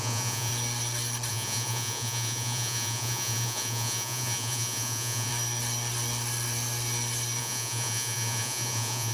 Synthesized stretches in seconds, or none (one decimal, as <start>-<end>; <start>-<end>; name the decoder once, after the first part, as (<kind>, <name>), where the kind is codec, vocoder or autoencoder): 0.0-0.5 (vocoder, Vocos); 1.3-5.3; 7.4-9.1